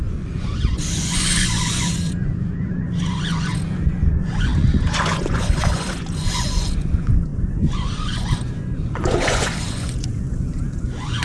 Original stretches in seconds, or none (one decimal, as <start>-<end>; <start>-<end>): none